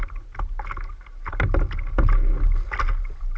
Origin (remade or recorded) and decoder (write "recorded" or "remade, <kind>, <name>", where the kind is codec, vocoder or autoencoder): recorded